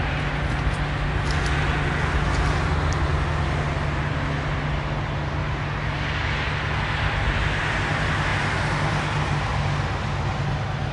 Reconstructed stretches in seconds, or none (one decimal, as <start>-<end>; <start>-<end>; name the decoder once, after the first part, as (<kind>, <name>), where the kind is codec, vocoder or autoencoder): none